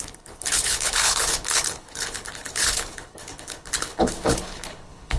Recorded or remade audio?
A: remade